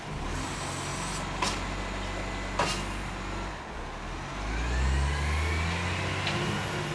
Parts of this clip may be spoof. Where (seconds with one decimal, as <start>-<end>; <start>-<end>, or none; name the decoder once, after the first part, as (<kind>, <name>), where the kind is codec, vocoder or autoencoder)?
none